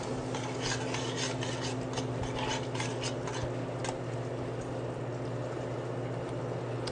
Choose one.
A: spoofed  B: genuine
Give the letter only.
B